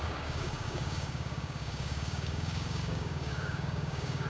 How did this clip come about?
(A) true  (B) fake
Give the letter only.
B